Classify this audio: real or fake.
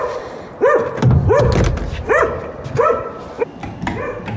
real